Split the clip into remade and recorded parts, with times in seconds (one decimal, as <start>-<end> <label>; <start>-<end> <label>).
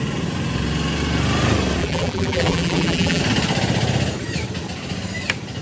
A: 0.0-1.8 recorded; 1.8-3.2 remade; 3.2-5.6 recorded